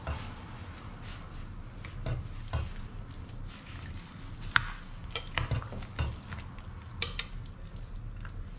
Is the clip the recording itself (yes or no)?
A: yes